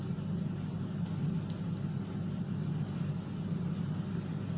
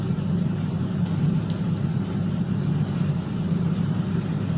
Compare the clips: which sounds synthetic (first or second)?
second